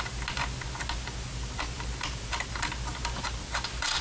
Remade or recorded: recorded